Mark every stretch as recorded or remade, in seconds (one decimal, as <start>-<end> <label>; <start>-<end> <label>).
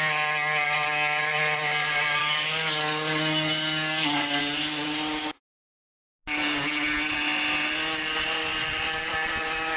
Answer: 0.0-2.2 recorded; 2.2-4.4 remade; 4.4-9.8 recorded